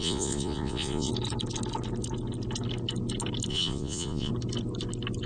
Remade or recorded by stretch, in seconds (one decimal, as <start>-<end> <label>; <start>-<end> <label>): 0.0-1.1 remade; 1.1-3.5 recorded; 3.5-4.3 remade; 4.3-5.3 recorded